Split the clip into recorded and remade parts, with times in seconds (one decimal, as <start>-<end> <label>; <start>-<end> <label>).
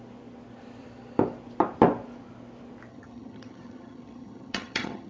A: 0.0-2.9 recorded; 2.9-5.1 remade